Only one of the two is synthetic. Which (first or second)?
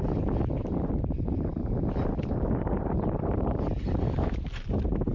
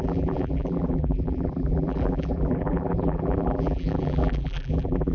second